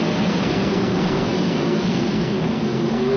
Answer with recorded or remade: remade